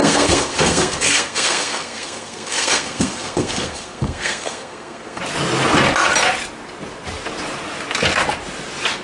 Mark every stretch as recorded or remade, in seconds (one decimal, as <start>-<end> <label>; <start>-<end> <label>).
0.0-5.2 remade; 5.2-9.0 recorded